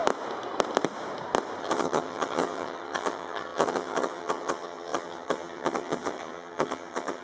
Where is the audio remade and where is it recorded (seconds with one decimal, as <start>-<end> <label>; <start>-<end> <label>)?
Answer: 0.0-1.6 recorded; 1.6-7.2 remade